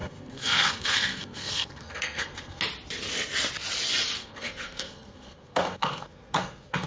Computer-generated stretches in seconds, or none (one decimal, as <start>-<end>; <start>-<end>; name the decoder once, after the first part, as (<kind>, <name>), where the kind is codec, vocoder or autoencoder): 0.0-2.6 (codec, SNAC); 4.2-6.9